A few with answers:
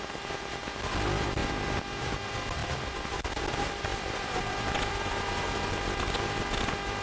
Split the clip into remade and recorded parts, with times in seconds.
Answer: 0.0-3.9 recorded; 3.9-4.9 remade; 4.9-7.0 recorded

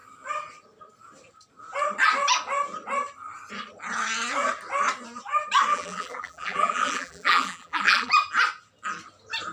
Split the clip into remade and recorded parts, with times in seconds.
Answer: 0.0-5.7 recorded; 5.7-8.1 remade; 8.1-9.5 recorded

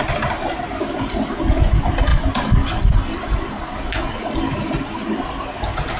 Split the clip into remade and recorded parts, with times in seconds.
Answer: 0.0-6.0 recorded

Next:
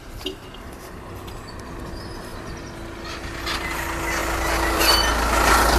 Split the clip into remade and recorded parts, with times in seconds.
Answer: 0.0-4.2 recorded; 4.2-4.8 remade; 4.8-5.8 recorded

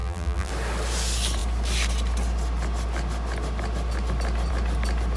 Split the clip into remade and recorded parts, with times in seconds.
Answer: 0.0-0.5 remade; 0.5-5.2 recorded

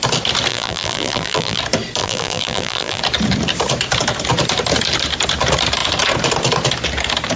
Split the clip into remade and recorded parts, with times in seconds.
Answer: 0.0-0.5 recorded; 0.5-1.6 remade; 1.6-2.0 recorded; 2.0-3.0 remade; 3.0-7.4 recorded